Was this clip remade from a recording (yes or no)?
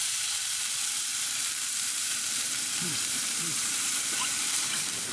yes